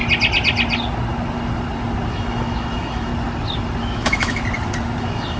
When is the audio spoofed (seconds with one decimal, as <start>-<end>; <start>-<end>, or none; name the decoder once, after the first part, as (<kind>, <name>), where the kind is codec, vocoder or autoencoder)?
2.1-3.1 (autoencoder, DAC-VAE); 3.8-4.4; 5.0-5.4